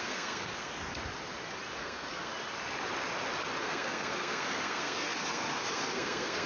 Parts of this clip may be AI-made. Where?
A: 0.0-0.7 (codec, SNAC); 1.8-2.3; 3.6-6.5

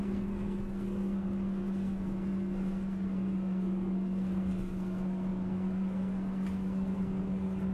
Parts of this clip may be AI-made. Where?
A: 0.0-7.7 (codec, SNAC)

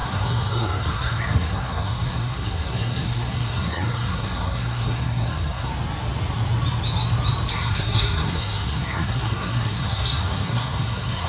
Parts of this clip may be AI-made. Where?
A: 0.0-5.7 (codec, SNAC); 7.5-11.3

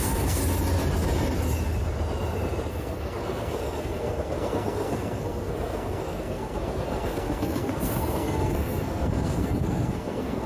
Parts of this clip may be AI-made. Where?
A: 0.0-0.4 (codec, SNAC); 2.7-10.5